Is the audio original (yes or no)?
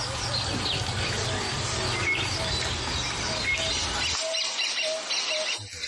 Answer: yes